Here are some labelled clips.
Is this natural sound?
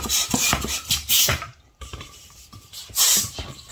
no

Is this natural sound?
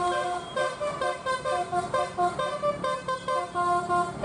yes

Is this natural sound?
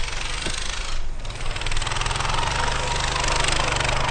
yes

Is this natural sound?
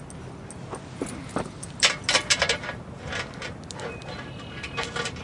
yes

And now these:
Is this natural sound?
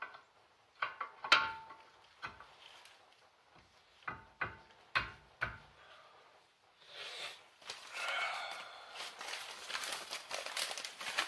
yes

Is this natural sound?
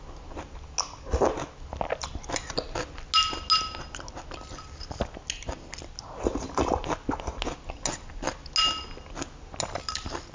yes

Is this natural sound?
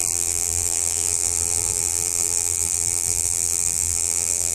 no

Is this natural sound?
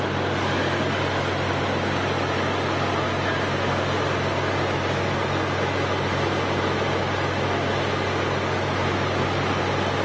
yes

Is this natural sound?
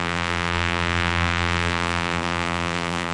no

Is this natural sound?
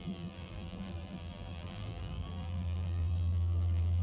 no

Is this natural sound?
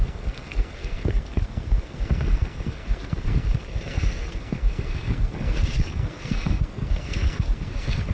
no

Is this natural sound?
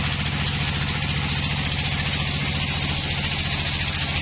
yes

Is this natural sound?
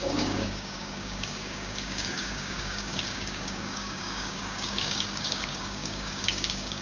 no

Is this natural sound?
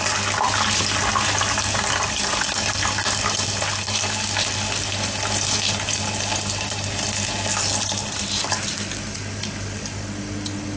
yes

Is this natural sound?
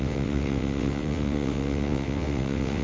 no